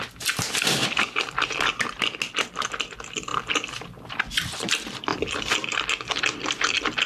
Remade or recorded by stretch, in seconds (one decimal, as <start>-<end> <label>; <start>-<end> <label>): 0.0-7.1 recorded